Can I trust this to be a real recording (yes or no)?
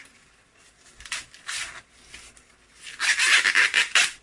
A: yes